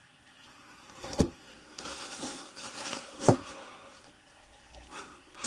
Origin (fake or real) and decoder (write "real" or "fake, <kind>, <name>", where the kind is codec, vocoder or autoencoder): fake, codec, SNAC